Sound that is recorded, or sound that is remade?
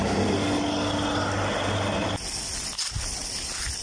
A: recorded